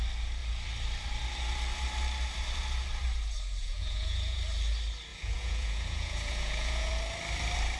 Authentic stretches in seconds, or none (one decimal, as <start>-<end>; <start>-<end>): 0.0-3.6; 4.4-5.1; 6.9-7.8